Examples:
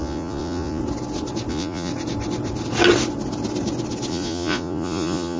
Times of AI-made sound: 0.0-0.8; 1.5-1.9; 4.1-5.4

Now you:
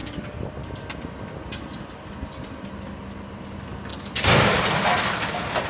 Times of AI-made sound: none

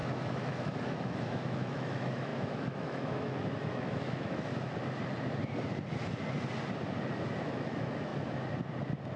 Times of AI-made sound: 0.0-4.5; 7.4-8.1

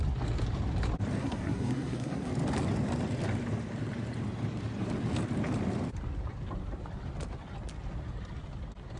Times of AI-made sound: 1.2-2.3

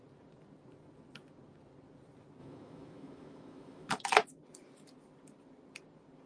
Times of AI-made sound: 2.4-3.9